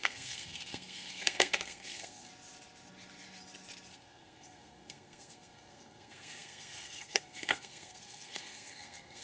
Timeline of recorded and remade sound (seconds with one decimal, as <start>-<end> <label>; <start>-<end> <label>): 0.0-2.3 remade; 2.3-3.9 recorded; 3.9-9.2 remade